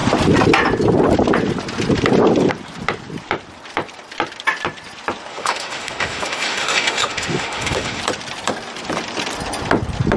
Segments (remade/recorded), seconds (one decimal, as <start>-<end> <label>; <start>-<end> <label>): 0.0-5.3 recorded; 5.3-8.0 remade; 8.0-10.2 recorded